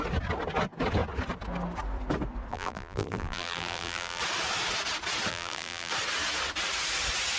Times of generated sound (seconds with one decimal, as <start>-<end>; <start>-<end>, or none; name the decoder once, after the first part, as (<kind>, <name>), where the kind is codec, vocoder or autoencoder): 2.5-4.2 (vocoder, BigVGAN v2); 5.3-5.9